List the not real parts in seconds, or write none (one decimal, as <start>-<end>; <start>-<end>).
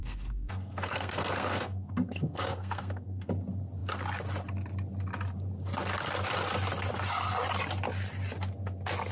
0.0-3.3